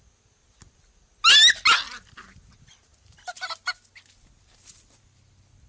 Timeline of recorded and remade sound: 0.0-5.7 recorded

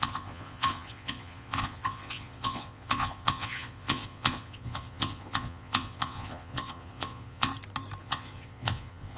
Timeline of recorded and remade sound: 0.0-7.5 remade; 7.5-8.0 recorded; 8.0-9.2 remade

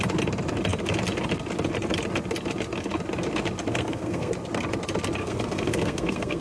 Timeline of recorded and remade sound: 0.0-3.7 recorded; 3.7-4.3 remade; 4.3-5.2 recorded; 5.2-6.4 remade

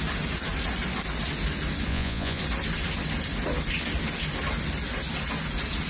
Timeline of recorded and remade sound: 0.0-1.9 recorded; 1.9-2.4 remade; 2.4-5.9 recorded

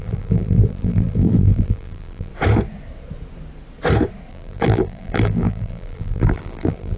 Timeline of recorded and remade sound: 0.0-2.3 remade; 2.3-4.3 recorded; 4.3-7.0 remade

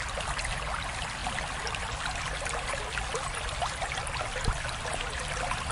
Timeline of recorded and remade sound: 0.0-5.7 recorded